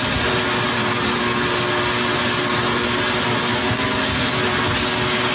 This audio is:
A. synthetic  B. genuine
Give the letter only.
B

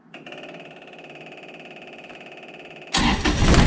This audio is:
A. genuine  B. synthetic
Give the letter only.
A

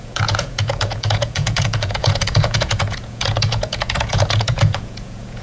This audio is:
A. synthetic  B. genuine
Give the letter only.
A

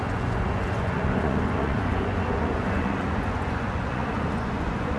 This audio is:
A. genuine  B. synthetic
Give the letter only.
B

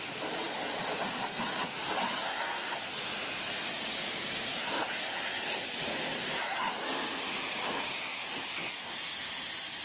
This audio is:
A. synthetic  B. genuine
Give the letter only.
B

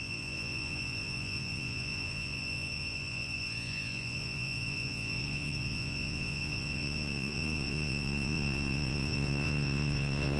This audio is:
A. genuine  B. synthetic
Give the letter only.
B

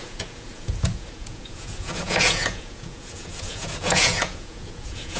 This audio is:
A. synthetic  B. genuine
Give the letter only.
A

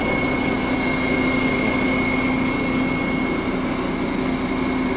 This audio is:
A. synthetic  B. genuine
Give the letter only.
B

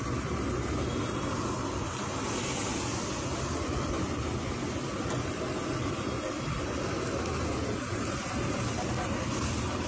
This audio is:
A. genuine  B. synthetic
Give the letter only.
A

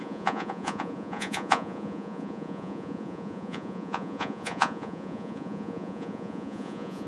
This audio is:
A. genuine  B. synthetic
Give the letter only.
B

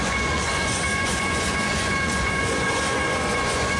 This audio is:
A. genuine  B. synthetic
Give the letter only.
B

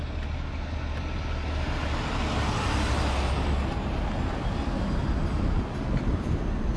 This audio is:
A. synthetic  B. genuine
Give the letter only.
B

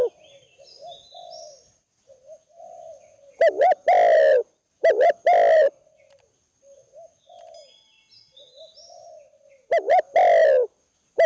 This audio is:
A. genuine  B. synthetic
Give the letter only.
A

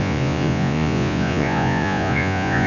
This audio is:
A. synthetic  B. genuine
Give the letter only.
A